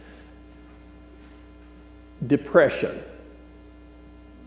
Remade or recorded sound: recorded